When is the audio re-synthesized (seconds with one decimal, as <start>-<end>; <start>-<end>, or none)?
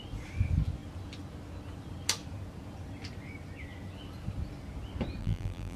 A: 5.2-5.8